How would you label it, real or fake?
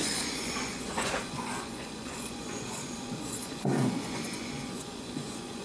fake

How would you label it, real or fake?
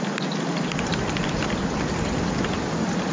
real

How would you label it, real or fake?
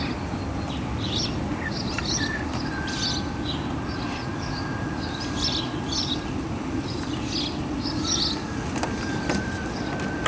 real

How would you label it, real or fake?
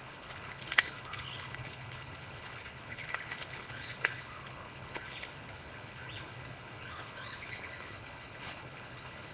fake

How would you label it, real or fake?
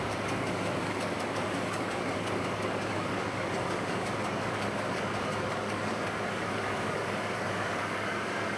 fake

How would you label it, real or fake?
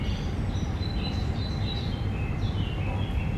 real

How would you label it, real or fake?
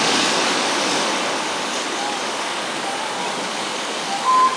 fake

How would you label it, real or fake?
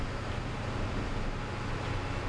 real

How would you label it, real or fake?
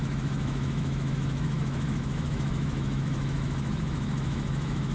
fake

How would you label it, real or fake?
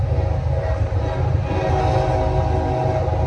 real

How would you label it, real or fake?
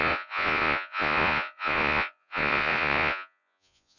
fake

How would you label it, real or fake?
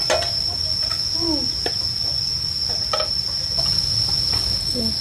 real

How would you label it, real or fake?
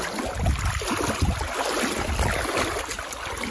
real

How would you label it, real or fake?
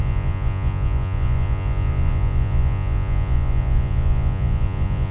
fake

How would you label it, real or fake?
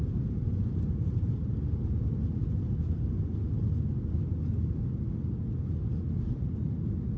real